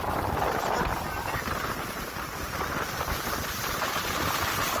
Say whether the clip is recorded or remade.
recorded